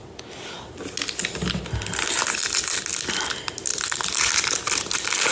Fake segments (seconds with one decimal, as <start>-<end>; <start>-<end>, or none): none